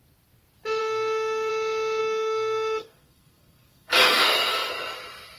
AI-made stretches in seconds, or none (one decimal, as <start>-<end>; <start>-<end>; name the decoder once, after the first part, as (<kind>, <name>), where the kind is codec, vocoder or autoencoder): 0.8-1.5 (codec, SNAC); 2.0-4.7

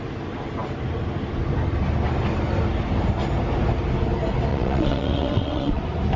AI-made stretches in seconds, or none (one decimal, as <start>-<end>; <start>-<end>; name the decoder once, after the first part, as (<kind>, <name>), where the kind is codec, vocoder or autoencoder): 4.5-5.8 (vocoder, WaveNeXt)

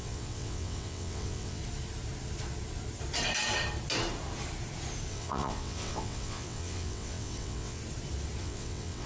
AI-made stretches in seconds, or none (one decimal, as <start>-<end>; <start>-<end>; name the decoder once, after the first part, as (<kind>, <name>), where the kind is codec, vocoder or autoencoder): 0.0-1.6 (vocoder, WaveNeXt); 5.1-7.8; 8.4-9.1